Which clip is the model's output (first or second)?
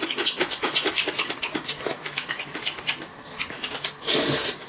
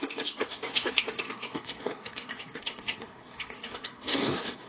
second